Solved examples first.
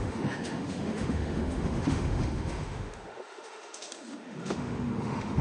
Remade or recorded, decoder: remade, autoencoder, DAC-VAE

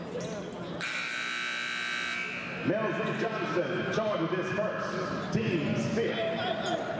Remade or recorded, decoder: recorded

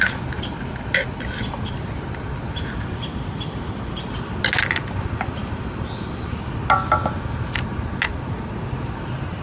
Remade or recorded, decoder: recorded